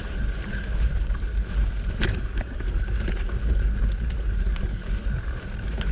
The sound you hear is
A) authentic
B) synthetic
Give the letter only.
B